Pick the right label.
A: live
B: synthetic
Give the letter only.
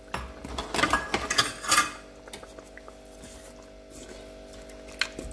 A